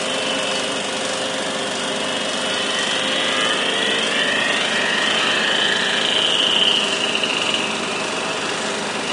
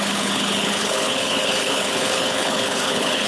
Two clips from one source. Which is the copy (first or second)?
second